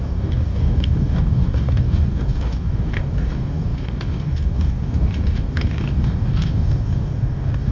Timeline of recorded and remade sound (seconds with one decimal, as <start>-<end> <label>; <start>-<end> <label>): 0.0-7.7 remade